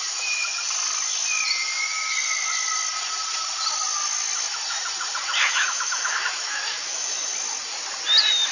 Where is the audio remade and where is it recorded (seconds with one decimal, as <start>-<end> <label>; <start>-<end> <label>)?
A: 0.0-5.3 recorded; 5.3-7.3 remade; 7.3-8.5 recorded